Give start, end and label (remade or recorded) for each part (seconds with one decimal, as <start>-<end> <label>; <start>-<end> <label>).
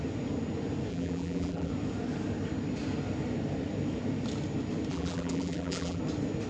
0.0-0.9 recorded; 0.9-1.7 remade; 1.7-4.9 recorded; 4.9-6.0 remade; 6.0-6.5 recorded